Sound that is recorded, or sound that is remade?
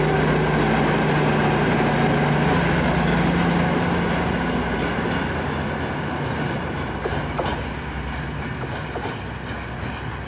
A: recorded